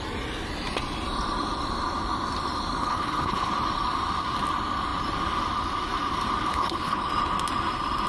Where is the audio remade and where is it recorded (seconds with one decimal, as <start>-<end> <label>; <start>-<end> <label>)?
0.0-2.8 recorded; 2.8-3.5 remade; 3.5-6.5 recorded; 6.5-7.1 remade; 7.1-8.1 recorded

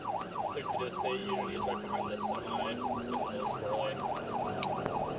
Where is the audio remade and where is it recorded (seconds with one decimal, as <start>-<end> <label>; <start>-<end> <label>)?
0.0-1.2 recorded; 1.2-3.5 remade; 3.5-3.9 recorded; 3.9-5.2 remade

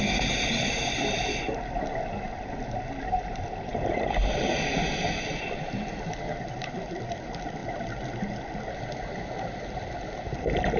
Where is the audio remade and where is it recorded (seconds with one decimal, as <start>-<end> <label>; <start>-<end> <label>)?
0.0-10.8 recorded

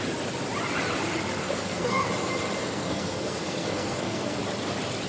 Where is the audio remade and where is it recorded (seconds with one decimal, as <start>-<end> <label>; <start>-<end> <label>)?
0.0-1.4 recorded; 1.4-2.1 remade; 2.1-2.6 recorded; 2.6-4.4 remade; 4.4-5.1 recorded